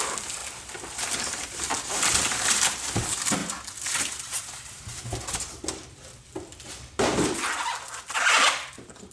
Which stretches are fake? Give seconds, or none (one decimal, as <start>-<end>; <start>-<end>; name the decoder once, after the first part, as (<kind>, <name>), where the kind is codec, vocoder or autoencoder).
0.0-3.4 (vocoder, BigVGAN v2); 8.7-9.1